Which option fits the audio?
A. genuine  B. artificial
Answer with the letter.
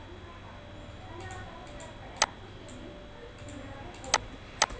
A